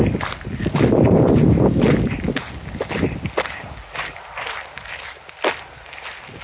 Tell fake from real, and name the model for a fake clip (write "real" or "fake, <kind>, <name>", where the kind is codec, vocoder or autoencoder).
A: real